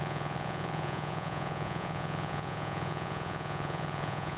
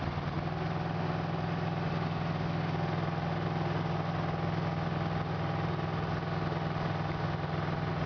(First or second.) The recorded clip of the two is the second